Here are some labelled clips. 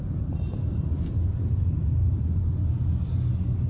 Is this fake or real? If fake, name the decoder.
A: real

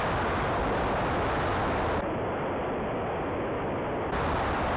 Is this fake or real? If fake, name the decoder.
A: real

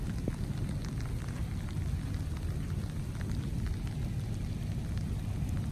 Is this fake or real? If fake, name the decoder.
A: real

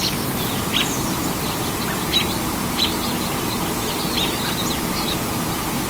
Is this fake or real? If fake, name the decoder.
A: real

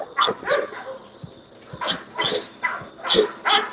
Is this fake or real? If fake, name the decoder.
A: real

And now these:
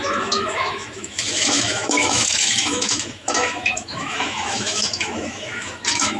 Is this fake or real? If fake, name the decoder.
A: fake, autoencoder, DAC-VAE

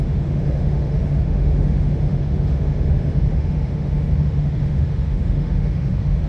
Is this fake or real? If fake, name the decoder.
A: fake, autoencoder, DAC-VAE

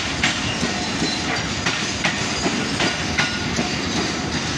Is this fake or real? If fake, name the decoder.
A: real